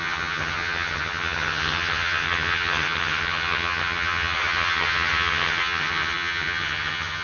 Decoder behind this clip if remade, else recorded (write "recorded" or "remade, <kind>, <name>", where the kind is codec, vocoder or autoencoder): remade, vocoder, HiFi-GAN